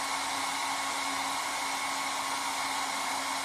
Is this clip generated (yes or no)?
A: no